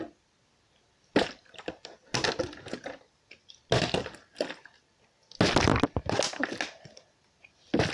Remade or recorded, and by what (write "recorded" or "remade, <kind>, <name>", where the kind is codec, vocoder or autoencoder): recorded